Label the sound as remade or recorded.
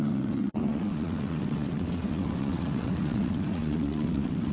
remade